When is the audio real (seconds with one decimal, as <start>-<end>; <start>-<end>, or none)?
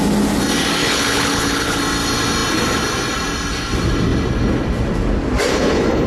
0.0-0.8; 1.8-5.5